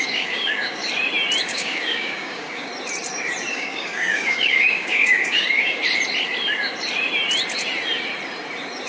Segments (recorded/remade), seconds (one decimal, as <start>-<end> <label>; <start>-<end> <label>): 0.0-0.8 remade; 0.8-1.4 recorded; 1.4-2.7 remade; 2.7-3.5 recorded; 3.5-5.8 remade; 5.8-8.9 recorded